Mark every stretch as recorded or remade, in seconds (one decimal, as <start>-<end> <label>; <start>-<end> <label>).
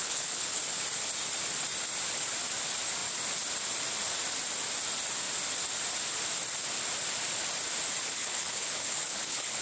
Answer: 0.0-0.6 remade; 0.6-8.2 recorded; 8.2-9.6 remade